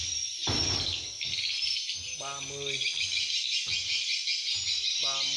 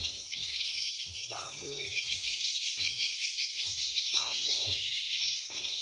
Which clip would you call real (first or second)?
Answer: first